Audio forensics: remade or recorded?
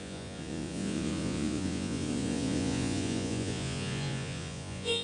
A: remade